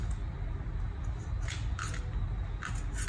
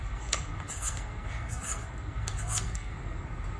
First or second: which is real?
first